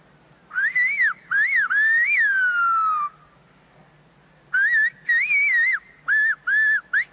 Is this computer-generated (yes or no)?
no